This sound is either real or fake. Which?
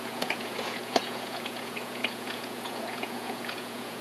fake